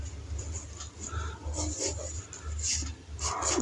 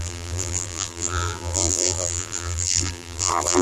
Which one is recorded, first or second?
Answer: first